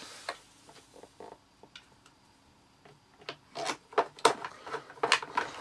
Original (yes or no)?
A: yes